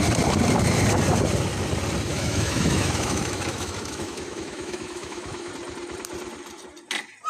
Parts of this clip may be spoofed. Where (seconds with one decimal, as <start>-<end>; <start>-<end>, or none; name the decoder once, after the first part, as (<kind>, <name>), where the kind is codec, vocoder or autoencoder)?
2.1-5.5 (autoencoder, DAC-VAE)